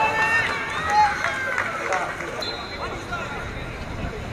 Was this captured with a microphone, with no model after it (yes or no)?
yes